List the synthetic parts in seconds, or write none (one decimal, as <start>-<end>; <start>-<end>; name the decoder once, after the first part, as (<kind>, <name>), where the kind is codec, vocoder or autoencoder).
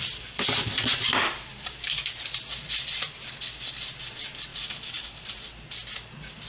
1.5-2.1 (vocoder, BigVGAN v2); 4.5-5.4